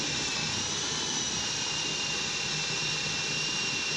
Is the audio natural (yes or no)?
yes